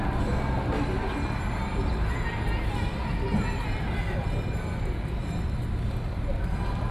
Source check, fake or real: real